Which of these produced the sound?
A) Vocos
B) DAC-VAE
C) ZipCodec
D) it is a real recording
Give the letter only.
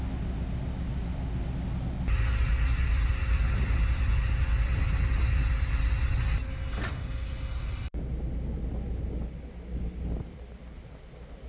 D